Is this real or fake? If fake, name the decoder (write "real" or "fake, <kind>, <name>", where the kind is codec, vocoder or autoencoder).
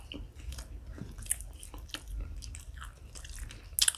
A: real